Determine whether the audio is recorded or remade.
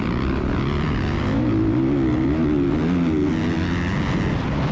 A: recorded